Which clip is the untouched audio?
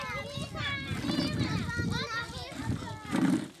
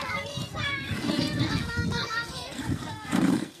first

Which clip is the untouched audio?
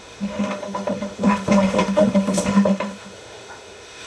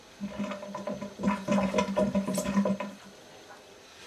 second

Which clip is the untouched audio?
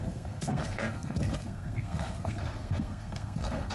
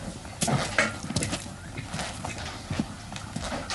second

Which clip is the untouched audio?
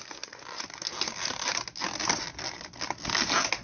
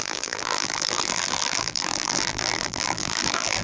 first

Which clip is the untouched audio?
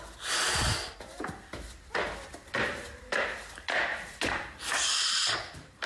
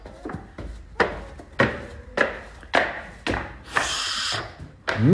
second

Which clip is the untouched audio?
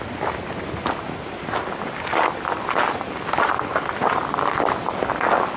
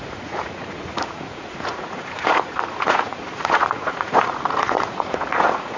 first